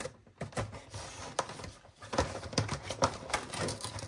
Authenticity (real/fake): real